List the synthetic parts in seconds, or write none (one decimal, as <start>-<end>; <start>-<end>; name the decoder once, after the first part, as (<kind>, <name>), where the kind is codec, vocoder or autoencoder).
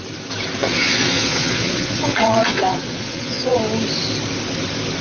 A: 0.6-3.6 (vocoder, Vocos)